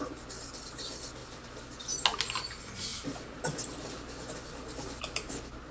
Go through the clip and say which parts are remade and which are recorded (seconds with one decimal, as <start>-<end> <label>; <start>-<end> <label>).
0.0-5.7 recorded